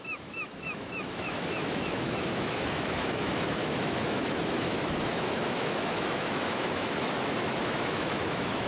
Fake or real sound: fake